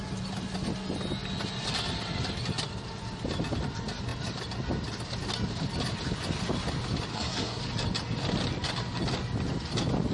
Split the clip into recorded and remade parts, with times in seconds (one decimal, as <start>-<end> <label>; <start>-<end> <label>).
0.0-7.1 recorded; 7.1-7.6 remade; 7.6-10.1 recorded